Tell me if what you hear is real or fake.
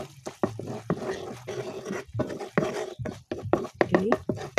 real